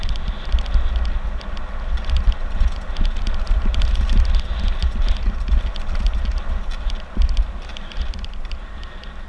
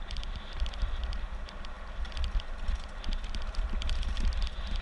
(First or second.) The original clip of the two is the first